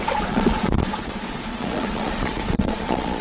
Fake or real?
fake